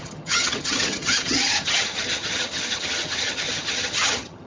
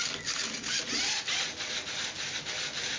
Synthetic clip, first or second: first